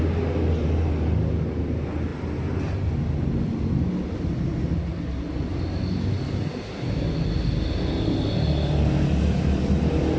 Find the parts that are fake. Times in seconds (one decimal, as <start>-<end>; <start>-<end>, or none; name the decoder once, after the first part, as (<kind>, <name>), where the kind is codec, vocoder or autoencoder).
none